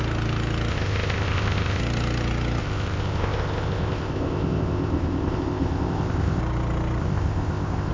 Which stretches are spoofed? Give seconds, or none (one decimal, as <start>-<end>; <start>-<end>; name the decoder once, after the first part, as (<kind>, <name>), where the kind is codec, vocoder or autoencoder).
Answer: 0.7-1.8 (codec, ZipCodec); 2.6-6.4; 7.0-7.9